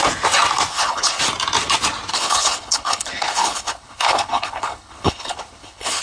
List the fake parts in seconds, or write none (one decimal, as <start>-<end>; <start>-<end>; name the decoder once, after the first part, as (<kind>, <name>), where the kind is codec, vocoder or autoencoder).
0.7-1.2 (codec, HILCodec); 2.1-6.0